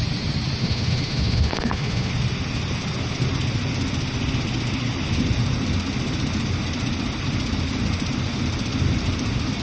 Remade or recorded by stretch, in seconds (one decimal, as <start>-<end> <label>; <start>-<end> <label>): 0.0-0.6 recorded; 0.6-2.1 remade; 2.1-9.6 recorded